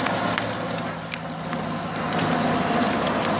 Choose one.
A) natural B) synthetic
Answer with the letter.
A